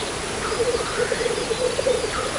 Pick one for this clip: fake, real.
real